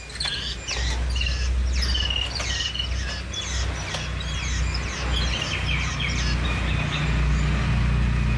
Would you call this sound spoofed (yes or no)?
no